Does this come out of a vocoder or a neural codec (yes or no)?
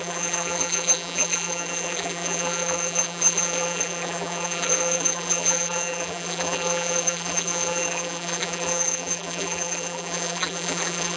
yes